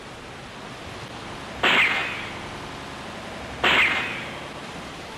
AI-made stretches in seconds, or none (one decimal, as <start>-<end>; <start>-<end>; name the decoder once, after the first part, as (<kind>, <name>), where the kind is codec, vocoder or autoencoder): none